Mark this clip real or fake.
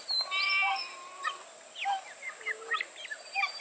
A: real